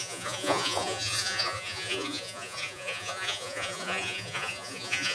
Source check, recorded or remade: remade